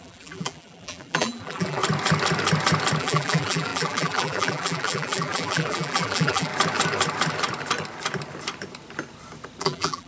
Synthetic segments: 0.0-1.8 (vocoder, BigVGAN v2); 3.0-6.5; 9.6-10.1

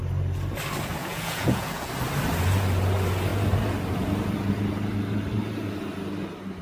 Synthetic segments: 1.0-1.9 (vocoder, Vocos)